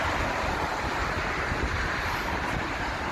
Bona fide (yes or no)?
yes